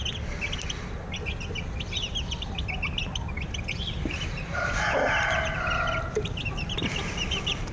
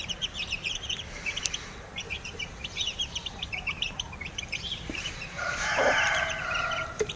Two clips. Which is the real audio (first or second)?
first